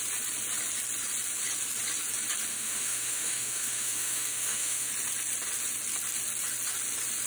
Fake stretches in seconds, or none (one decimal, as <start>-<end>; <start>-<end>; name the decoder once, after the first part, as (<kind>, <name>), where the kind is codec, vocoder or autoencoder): 2.5-4.9 (autoencoder, DAC-VAE)